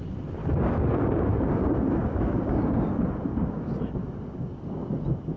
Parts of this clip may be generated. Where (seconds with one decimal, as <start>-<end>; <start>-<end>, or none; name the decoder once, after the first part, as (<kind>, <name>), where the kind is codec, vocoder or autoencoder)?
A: 0.4-2.9 (codec, DAC); 3.3-4.9